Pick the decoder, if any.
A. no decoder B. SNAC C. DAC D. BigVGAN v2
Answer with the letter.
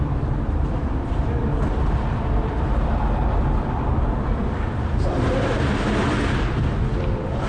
D